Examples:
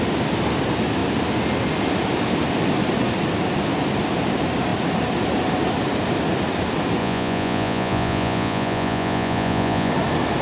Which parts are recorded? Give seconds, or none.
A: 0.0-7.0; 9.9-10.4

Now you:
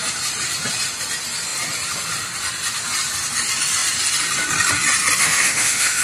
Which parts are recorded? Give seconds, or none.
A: 0.0-5.2

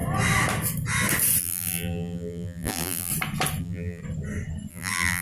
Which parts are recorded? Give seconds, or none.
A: 0.0-1.4; 3.1-3.6; 4.0-4.7

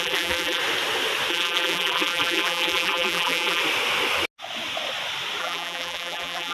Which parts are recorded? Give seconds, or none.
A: 0.6-1.3; 3.6-5.4

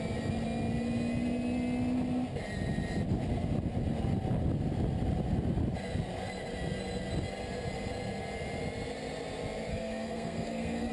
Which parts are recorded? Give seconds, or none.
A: 0.0-9.7